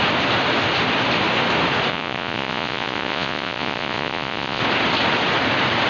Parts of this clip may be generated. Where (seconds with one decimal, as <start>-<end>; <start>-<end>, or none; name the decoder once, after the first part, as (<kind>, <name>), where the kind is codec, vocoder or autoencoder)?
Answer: 1.9-4.6 (vocoder, Vocos)